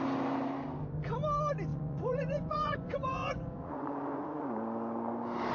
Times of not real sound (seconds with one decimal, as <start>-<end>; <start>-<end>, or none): 1.7-4.5